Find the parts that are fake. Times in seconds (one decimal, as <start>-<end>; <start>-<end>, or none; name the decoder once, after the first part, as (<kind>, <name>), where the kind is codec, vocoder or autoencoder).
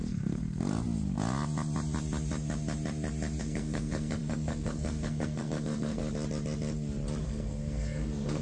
0.0-0.7 (codec, SNAC); 3.4-6.0; 7.2-8.4